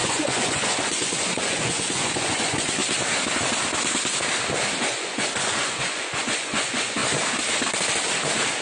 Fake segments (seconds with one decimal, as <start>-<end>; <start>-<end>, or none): 0.0-2.8; 4.8-7.0